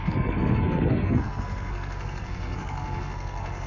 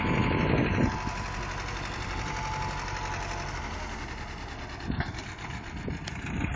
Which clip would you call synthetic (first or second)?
first